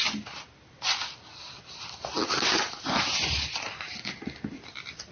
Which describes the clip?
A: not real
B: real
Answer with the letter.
B